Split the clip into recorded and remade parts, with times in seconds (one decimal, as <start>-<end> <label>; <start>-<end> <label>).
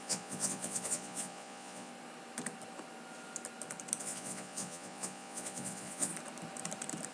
0.0-1.9 remade; 1.9-4.0 recorded; 4.0-6.1 remade; 6.1-7.1 recorded